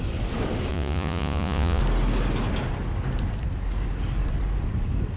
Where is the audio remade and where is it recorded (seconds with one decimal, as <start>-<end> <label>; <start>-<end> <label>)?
0.0-0.7 recorded; 0.7-1.8 remade; 1.8-5.2 recorded

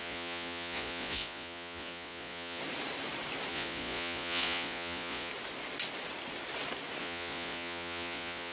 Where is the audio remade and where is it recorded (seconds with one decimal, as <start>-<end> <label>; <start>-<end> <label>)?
0.0-2.6 remade; 2.6-3.5 recorded; 3.5-5.3 remade; 5.3-7.0 recorded; 7.0-8.5 remade

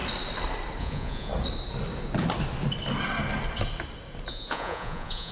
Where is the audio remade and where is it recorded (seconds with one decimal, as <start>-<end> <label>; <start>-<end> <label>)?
0.0-0.8 recorded; 0.8-1.3 remade; 1.3-4.3 recorded; 4.3-5.3 remade

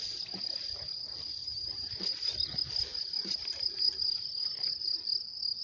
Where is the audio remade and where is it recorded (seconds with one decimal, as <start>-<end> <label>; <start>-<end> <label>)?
0.0-1.4 recorded; 1.4-1.9 remade; 1.9-5.6 recorded

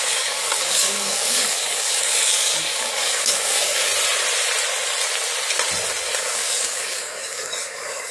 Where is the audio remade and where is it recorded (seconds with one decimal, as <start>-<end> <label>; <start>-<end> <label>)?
0.0-3.9 remade; 3.9-6.2 recorded; 6.2-8.1 remade

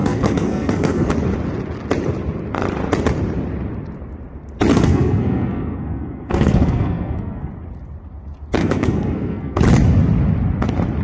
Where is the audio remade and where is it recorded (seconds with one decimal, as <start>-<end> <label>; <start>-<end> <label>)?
0.0-1.1 remade; 1.1-4.7 recorded; 4.7-7.5 remade; 7.5-8.6 recorded; 8.6-9.6 remade; 9.6-11.0 recorded

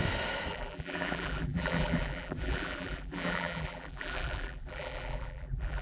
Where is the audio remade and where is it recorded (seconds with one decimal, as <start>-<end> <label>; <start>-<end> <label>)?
0.0-0.5 recorded; 0.5-5.8 remade